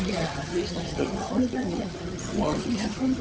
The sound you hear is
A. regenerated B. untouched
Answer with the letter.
A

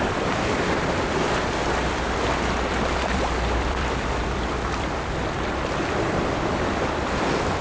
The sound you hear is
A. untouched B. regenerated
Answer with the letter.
B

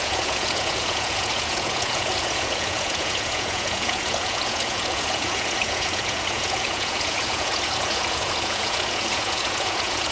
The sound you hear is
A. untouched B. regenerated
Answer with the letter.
B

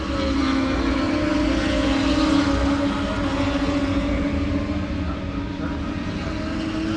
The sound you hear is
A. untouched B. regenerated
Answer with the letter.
A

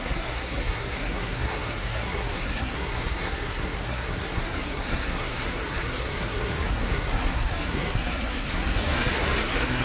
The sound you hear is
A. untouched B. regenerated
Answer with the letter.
B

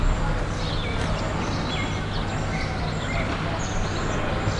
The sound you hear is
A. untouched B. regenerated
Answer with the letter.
A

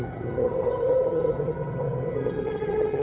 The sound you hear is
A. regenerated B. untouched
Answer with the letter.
A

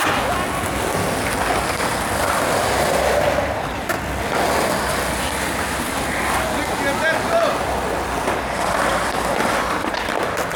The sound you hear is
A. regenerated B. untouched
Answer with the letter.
B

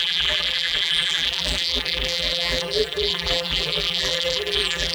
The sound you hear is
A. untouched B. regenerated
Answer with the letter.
B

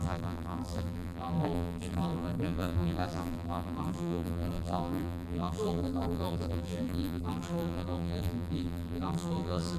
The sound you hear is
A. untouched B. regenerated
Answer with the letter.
B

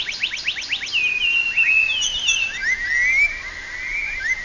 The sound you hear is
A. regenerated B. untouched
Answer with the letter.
B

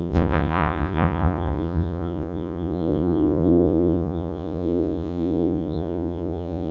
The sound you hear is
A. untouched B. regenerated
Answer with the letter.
B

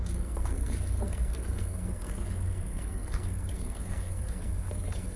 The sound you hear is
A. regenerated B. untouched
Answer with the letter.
A